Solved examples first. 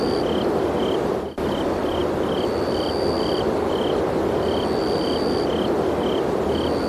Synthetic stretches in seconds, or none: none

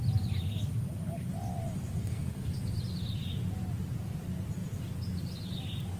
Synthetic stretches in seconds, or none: 2.0-2.6 (codec, SNAC)

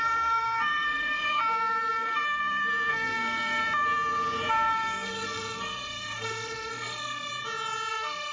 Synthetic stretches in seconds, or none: 0.0-1.4 (codec, SNAC); 1.9-2.4; 2.9-3.6; 4.5-7.3; 7.9-8.3